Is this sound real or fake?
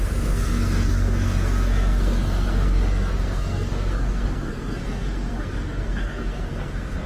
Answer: fake